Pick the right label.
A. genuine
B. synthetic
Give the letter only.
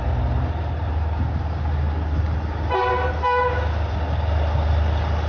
A